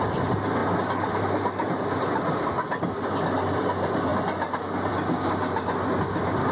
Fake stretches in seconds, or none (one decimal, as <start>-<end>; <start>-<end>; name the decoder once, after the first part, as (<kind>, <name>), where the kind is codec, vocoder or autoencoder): none

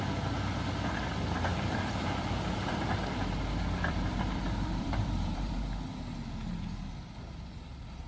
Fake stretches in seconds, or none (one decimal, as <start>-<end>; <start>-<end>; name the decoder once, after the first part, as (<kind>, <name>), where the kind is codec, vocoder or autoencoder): 1.5-5.6 (vocoder, BigVGAN v2)

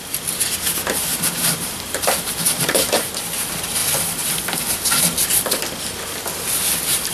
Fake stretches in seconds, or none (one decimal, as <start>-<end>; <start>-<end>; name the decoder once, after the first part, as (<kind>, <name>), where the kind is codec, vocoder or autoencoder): 1.1-3.2 (vocoder, BigVGAN v2)

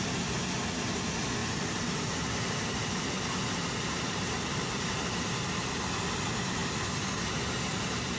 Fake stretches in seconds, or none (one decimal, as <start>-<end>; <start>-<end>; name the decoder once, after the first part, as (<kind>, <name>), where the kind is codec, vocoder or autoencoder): 1.4-5.7 (vocoder, BigVGAN v2)

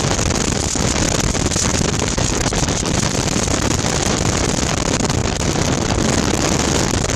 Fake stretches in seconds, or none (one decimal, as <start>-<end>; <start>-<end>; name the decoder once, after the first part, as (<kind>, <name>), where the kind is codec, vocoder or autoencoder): 1.7-4.5 (vocoder, BigVGAN v2); 5.2-6.0

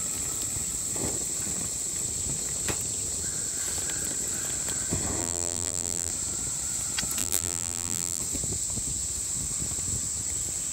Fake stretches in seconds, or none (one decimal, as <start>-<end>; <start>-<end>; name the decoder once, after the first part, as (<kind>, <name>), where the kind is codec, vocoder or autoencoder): 5.2-6.1 (vocoder, BigVGAN v2); 7.2-8.2

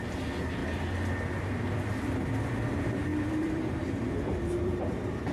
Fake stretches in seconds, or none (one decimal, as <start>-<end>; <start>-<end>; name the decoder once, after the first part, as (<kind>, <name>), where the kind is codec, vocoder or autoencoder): 3.1-5.3 (vocoder, BigVGAN v2)